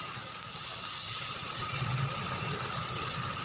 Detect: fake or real real